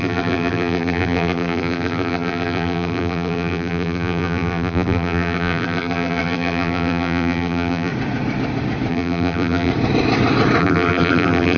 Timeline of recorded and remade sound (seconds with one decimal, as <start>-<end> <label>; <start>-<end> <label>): 0.0-7.9 remade; 7.9-8.9 recorded; 8.9-9.7 remade; 9.7-10.6 recorded; 10.6-11.6 remade

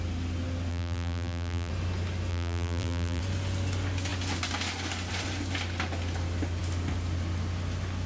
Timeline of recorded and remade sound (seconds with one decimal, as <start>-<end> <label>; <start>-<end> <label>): 0.0-0.7 recorded; 0.7-1.7 remade; 1.7-2.3 recorded; 2.3-3.2 remade; 3.2-8.1 recorded

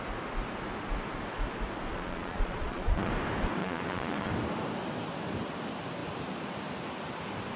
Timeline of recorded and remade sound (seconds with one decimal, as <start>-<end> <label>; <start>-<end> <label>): 0.0-1.9 recorded; 1.9-3.1 remade; 3.1-3.6 recorded; 3.6-4.3 remade; 4.3-7.6 recorded

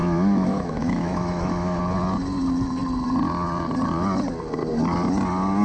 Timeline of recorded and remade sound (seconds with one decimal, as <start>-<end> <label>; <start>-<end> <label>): 0.0-1.8 remade; 1.8-5.6 recorded

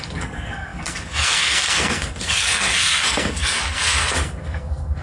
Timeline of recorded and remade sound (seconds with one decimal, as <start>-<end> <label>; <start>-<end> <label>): 0.0-5.0 remade